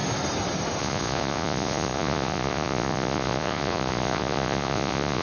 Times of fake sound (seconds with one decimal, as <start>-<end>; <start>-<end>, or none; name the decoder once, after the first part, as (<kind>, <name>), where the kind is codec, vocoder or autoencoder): 0.8-5.2 (vocoder, Vocos)